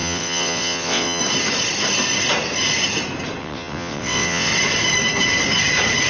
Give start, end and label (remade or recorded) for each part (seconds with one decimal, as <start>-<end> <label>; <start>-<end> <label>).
0.0-1.2 remade; 1.2-3.4 recorded; 3.4-4.5 remade; 4.5-6.1 recorded

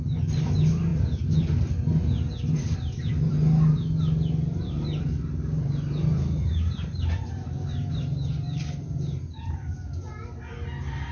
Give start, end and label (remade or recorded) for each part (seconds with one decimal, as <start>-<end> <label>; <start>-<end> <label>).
0.0-11.1 recorded

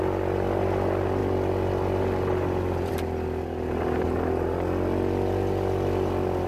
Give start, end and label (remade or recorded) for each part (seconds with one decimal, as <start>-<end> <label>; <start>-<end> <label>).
0.0-6.5 recorded